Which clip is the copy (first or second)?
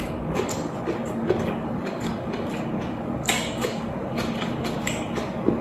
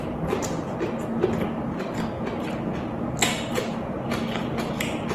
first